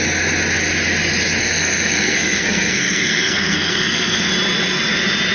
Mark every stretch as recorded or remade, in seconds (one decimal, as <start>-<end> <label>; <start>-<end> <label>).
0.0-1.4 recorded; 1.4-4.3 remade; 4.3-5.3 recorded